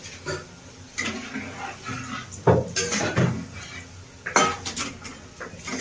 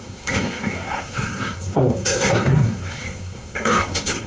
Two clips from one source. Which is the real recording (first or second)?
first